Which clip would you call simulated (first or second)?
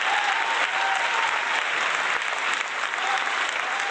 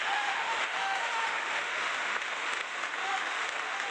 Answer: second